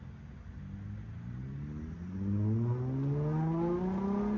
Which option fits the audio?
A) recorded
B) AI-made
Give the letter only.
A